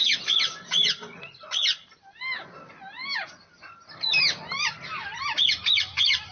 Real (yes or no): yes